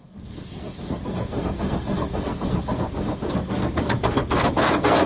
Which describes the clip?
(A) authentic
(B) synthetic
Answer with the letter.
B